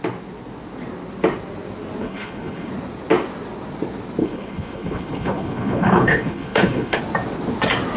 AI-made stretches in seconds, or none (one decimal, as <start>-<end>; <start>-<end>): 2.0-2.7; 4.2-7.0